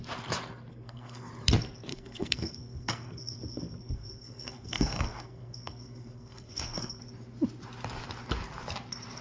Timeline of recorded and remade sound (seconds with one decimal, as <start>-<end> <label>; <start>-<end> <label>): 0.0-0.7 recorded; 0.7-1.3 remade; 1.3-1.9 recorded; 1.9-7.0 remade; 7.0-9.2 recorded